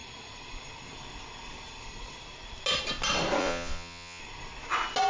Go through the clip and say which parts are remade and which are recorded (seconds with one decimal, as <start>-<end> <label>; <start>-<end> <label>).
0.0-3.4 recorded; 3.4-4.2 remade; 4.2-5.1 recorded